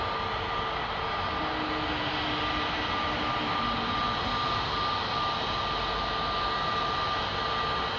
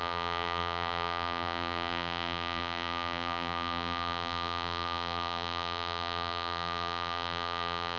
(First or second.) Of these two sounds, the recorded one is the first